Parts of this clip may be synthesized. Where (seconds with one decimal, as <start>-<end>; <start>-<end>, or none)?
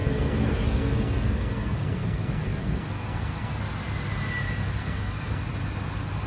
0.0-3.6; 4.8-5.4